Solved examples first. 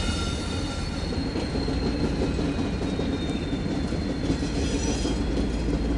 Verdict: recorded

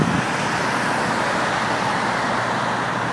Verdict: recorded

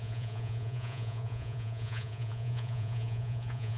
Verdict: remade